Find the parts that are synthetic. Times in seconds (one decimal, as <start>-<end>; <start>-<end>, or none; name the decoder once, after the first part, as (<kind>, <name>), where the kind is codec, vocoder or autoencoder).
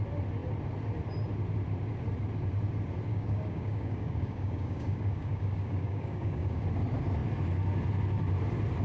3.1-6.6 (codec, DAC)